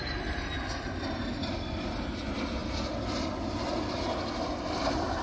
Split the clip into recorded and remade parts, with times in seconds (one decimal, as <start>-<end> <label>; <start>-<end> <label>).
0.0-5.2 recorded